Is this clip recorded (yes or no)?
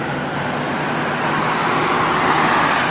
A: yes